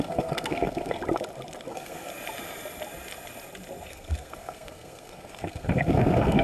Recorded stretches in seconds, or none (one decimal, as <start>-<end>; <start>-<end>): 1.0-1.7; 2.1-3.9